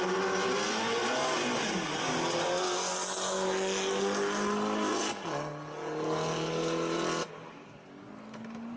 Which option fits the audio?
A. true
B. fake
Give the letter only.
A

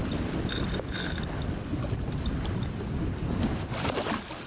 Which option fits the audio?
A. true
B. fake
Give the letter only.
A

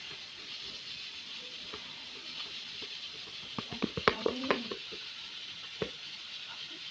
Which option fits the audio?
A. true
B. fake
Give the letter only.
B